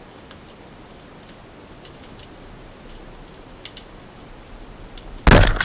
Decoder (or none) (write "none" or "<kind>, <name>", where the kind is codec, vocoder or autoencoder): none